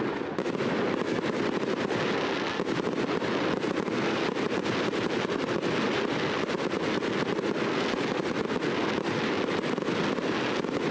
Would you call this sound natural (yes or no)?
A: yes